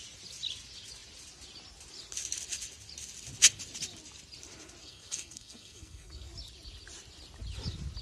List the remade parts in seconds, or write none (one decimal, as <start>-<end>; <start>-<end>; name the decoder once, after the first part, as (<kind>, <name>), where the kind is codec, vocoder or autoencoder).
4.8-6.3 (codec, SNAC)